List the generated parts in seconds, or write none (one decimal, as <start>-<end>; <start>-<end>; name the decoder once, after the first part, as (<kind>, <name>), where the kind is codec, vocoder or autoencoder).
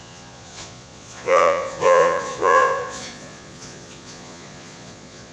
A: 0.0-5.3 (vocoder, Vocos)